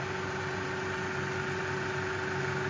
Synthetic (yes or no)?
no